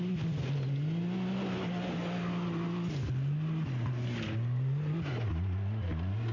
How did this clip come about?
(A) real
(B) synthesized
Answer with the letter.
A